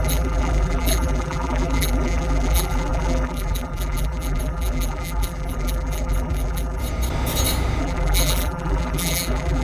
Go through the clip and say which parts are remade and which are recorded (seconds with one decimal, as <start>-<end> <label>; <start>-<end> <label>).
0.0-6.8 remade; 6.8-7.8 recorded; 7.8-9.6 remade